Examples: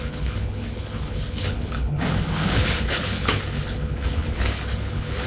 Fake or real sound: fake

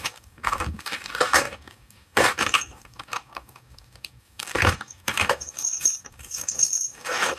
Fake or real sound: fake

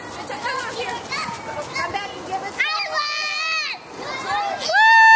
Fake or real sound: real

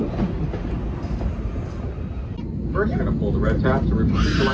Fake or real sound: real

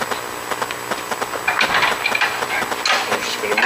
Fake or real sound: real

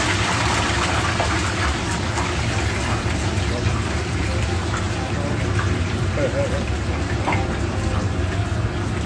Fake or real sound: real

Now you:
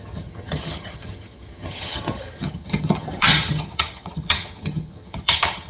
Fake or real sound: fake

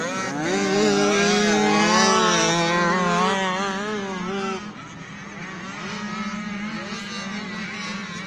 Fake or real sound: real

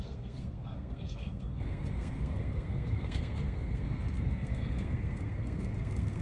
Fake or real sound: fake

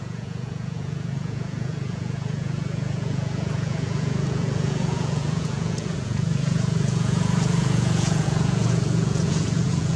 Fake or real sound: fake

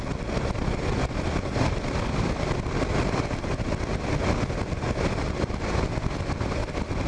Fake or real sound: real